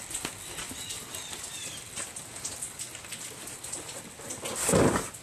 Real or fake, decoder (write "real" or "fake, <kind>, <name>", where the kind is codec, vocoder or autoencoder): real